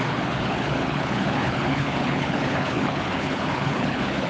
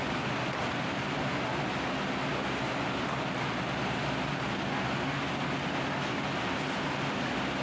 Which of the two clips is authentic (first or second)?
second